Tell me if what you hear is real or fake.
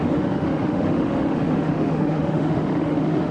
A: fake